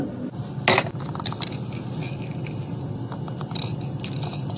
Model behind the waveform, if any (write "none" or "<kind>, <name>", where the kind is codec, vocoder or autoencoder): none